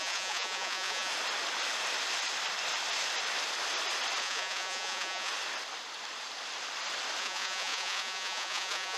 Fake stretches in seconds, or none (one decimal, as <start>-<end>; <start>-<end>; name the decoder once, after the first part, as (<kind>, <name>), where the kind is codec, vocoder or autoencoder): 0.0-1.1 (vocoder, Vocos); 4.2-5.3; 7.2-9.0